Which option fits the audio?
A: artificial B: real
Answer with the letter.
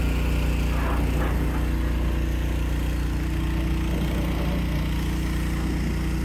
B